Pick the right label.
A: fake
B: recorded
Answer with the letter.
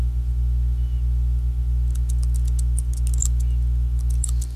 B